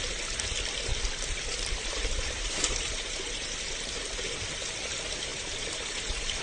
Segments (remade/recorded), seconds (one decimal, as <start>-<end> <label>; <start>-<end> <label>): 0.0-0.9 recorded; 0.9-4.4 remade; 4.4-5.3 recorded; 5.3-6.4 remade